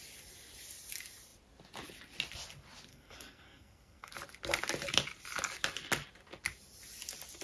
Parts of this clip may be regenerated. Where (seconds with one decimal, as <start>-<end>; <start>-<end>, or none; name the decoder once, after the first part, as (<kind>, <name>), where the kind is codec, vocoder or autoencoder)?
2.9-4.1 (codec, SNAC)